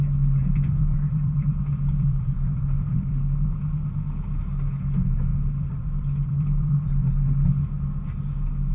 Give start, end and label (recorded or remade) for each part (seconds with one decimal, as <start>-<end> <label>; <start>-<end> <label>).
0.0-0.4 recorded; 0.4-3.6 remade; 3.6-5.3 recorded; 5.3-7.1 remade; 7.1-8.7 recorded